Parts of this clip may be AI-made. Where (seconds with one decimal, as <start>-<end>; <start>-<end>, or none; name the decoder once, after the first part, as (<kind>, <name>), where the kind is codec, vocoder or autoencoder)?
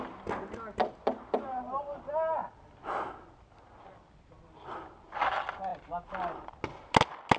1.5-2.1 (vocoder, BigVGAN v2)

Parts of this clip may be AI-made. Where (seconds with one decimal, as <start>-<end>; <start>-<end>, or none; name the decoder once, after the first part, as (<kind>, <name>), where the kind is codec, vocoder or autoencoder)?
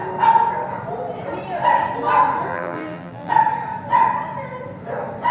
2.5-3.3 (vocoder, BigVGAN v2)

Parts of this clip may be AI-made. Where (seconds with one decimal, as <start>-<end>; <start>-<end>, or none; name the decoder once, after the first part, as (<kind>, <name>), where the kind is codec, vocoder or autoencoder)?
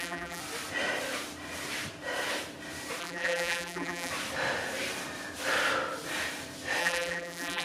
0.0-0.4 (vocoder, BigVGAN v2); 3.0-4.1; 6.8-7.6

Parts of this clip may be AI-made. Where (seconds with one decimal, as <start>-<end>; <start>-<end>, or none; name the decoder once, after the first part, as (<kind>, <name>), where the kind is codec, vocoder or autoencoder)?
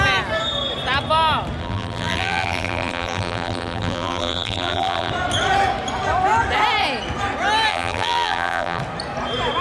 1.6-5.1 (vocoder, BigVGAN v2); 7.7-8.8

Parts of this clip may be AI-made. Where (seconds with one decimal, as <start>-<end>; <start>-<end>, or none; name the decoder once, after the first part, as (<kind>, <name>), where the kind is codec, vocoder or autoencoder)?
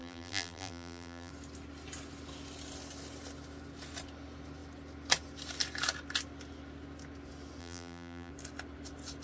0.0-1.3 (vocoder, BigVGAN v2); 7.6-8.3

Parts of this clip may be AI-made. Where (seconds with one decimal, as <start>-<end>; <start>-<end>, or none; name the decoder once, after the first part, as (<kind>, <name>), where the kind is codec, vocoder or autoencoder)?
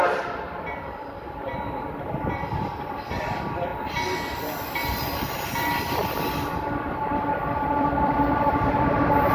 0.0-3.7 (vocoder, BigVGAN v2); 4.7-9.3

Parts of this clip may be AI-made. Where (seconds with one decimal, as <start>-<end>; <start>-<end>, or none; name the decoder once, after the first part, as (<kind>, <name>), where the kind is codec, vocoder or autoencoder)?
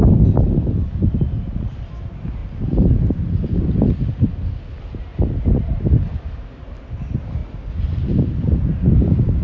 2.4-4.3 (vocoder, BigVGAN v2); 5.1-5.8; 7.4-8.0